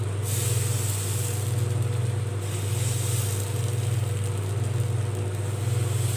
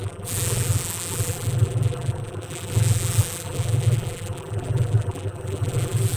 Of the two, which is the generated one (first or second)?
second